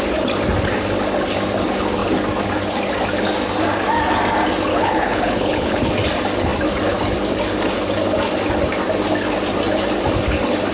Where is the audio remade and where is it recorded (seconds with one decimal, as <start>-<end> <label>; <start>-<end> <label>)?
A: 0.0-4.7 recorded; 4.7-5.8 remade; 5.8-10.7 recorded